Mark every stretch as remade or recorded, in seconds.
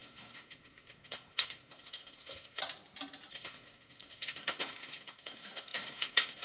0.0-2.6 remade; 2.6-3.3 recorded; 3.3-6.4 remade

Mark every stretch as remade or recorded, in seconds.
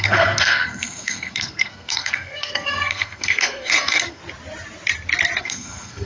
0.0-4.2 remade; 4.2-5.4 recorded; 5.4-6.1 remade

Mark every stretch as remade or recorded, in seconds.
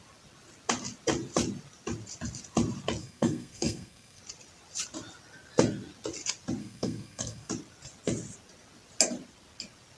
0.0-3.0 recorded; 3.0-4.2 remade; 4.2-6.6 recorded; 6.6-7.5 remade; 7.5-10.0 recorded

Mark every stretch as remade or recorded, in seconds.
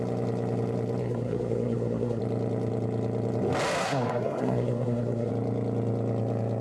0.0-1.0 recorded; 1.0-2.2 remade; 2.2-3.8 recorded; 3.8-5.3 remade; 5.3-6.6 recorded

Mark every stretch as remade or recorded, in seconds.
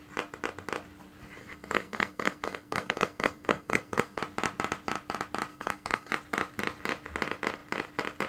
0.0-1.4 recorded; 1.4-4.2 remade; 4.2-5.5 recorded; 5.5-6.1 remade; 6.1-8.3 recorded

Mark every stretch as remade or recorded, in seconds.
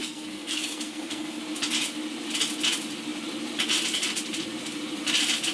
0.0-1.4 remade; 1.4-5.5 recorded